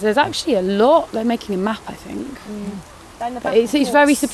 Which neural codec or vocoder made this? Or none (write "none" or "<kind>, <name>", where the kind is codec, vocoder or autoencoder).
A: none